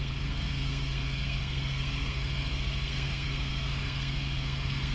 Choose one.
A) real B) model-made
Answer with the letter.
B